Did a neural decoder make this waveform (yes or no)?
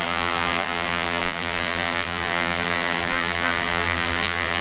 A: yes